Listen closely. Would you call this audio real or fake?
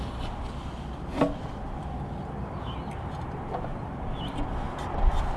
real